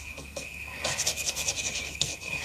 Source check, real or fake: fake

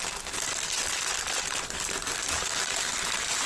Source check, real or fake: real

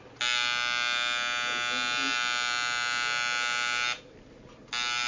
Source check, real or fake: real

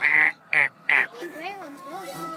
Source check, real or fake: fake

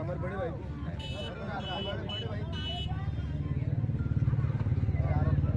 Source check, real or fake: real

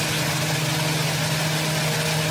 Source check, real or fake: real